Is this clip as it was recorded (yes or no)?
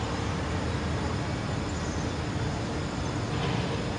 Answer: yes